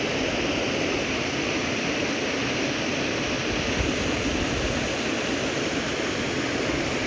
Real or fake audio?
real